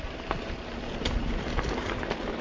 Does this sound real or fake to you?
real